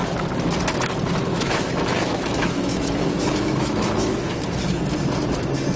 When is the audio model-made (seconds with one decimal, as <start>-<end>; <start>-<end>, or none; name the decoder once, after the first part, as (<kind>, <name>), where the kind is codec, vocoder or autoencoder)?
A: 1.3-4.8 (autoencoder, DAC-VAE)